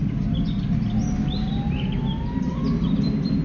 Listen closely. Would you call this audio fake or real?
real